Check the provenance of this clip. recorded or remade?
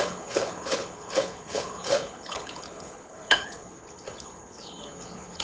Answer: remade